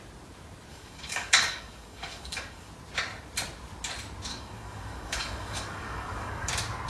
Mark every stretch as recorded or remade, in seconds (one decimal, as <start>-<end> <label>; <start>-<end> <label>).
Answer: 0.0-0.7 recorded; 0.7-2.7 remade; 2.7-4.3 recorded; 4.3-6.5 remade; 6.5-6.9 recorded